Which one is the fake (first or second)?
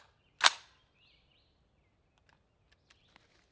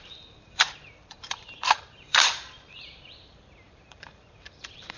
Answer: second